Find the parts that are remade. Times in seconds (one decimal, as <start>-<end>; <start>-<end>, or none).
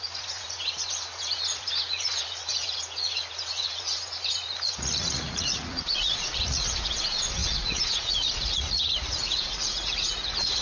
0.0-10.6